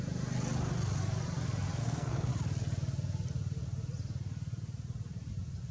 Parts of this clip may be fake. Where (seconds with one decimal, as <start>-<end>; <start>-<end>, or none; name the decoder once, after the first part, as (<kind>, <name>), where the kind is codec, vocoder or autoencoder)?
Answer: 1.8-2.3 (codec, SNAC)